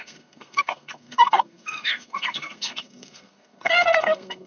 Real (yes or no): no